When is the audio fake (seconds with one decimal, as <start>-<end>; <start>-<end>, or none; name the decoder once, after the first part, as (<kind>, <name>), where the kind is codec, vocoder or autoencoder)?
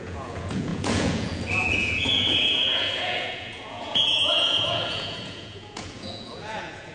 0.0-6.9 (vocoder, Vocos)